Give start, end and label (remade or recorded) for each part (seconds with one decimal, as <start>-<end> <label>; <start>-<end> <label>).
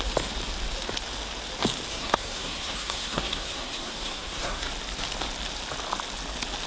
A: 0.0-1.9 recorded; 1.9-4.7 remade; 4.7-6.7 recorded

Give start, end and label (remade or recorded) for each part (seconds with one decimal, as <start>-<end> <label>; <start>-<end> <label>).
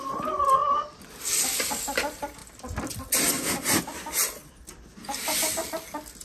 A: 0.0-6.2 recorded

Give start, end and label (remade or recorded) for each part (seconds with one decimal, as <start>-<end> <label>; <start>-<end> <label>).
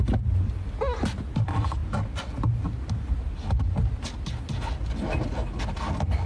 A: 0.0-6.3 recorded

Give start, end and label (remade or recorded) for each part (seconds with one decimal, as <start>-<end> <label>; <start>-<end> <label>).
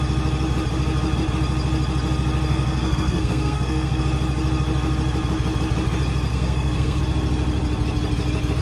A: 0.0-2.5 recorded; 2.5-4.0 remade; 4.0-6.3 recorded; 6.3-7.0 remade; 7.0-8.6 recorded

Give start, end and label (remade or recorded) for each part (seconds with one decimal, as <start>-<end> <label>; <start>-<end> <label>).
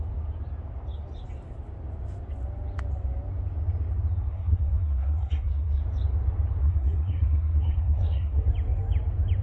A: 0.0-4.3 recorded; 4.3-5.8 remade; 5.8-6.6 recorded; 6.6-8.5 remade; 8.5-9.4 recorded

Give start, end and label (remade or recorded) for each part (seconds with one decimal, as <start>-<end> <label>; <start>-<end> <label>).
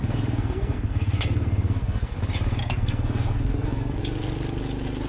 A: 0.0-2.2 remade; 2.2-2.6 recorded; 2.6-4.0 remade; 4.0-5.1 recorded